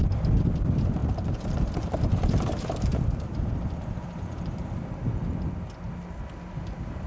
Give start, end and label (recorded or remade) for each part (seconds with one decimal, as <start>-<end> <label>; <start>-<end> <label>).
0.0-1.0 recorded; 1.0-4.7 remade; 4.7-7.1 recorded